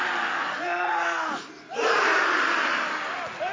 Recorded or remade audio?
recorded